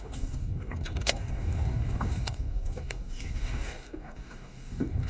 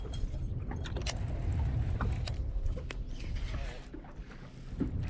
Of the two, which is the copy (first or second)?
first